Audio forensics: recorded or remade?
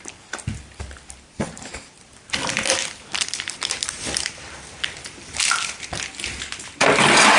remade